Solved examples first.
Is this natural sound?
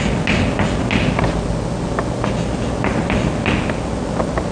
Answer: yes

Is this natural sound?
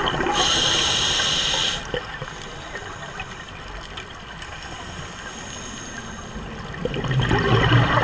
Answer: yes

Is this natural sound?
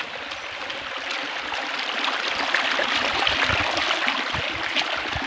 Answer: yes